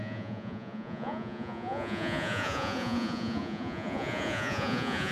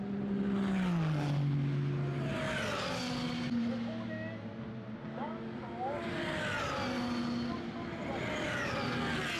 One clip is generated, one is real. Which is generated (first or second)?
first